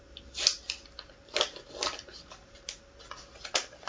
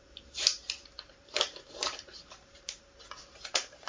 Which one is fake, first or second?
second